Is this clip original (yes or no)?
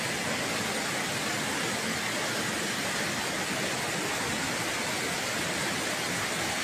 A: yes